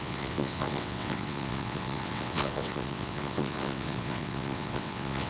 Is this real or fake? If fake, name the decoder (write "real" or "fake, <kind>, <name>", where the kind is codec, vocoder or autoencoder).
fake, vocoder, WaveNeXt